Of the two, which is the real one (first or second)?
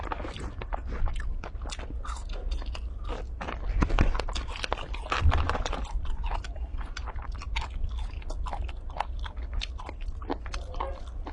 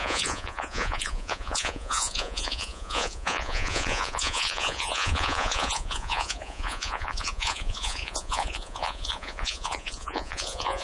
first